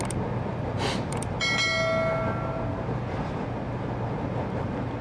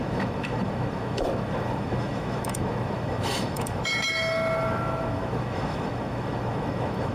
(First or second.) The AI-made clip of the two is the second